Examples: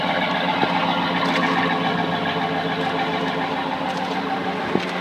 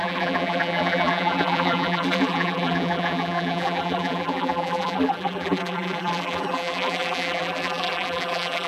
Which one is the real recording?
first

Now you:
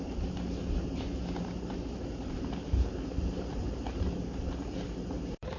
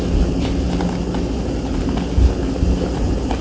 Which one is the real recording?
second